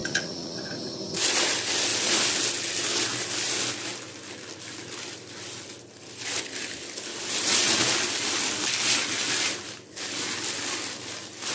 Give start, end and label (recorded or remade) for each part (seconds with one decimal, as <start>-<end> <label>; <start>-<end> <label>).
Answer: 0.0-0.6 remade; 0.6-11.5 recorded